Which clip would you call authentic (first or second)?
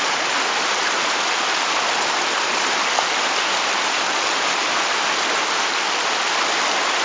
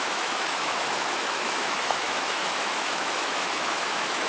first